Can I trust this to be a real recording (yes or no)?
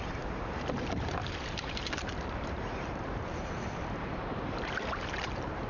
no